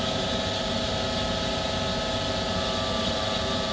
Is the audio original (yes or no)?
yes